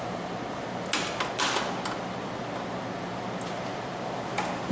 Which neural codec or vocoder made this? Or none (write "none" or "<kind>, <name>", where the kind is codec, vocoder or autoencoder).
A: none